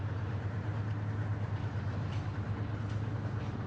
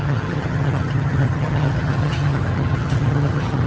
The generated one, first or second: second